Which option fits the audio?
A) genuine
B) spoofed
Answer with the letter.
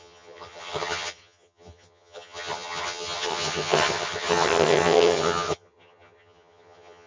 B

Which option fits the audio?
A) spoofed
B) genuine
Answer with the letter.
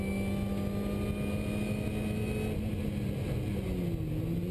B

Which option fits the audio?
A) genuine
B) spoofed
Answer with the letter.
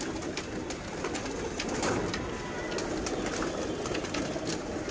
A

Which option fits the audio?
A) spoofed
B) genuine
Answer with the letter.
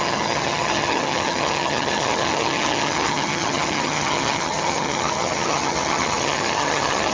A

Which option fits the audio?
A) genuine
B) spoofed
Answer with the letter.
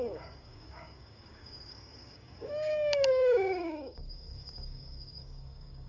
B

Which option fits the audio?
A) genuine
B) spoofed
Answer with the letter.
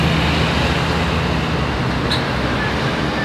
A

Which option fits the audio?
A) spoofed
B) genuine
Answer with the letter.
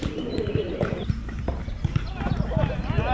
B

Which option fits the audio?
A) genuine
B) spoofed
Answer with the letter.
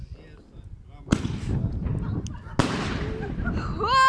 A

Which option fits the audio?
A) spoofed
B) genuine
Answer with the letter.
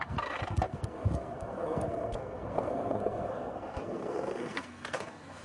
A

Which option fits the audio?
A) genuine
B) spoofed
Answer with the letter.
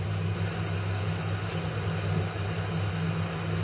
A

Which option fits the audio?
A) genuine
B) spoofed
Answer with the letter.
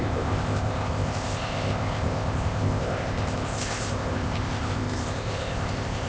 B